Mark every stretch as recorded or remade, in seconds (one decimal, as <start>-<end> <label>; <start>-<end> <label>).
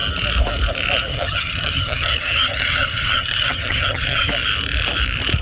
0.0-1.1 recorded; 1.1-4.3 remade; 4.3-5.4 recorded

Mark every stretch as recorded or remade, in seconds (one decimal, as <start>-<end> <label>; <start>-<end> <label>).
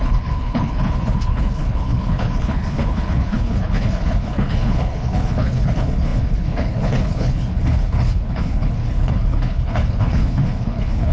0.0-11.1 remade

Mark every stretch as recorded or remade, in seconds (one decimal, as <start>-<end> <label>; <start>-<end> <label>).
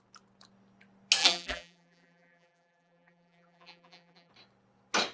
0.0-1.2 recorded; 1.2-4.3 remade; 4.3-5.1 recorded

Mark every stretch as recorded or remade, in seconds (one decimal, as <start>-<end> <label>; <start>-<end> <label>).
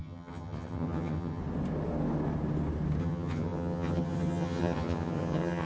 0.0-1.4 remade; 1.4-3.0 recorded; 3.0-5.7 remade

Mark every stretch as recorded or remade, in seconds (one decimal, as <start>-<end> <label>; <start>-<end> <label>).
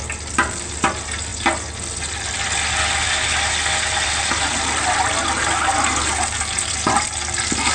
0.0-7.7 recorded